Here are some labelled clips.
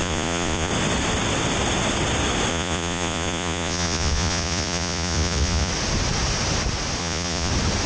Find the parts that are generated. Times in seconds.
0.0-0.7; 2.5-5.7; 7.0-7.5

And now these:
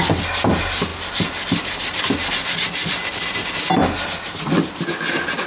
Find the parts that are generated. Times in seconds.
none